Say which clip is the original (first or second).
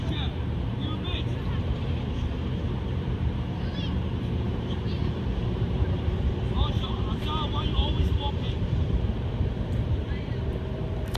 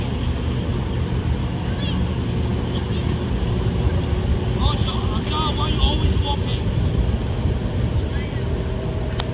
second